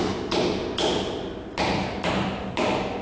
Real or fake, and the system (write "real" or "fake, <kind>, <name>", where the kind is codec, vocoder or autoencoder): real